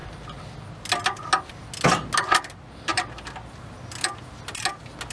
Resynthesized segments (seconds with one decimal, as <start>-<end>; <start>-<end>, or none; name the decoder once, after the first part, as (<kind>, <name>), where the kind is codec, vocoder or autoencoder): none